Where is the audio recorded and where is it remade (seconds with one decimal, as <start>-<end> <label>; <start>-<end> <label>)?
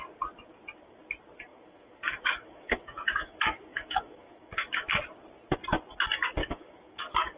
0.0-1.5 recorded; 1.5-5.0 remade; 5.0-6.4 recorded; 6.4-7.4 remade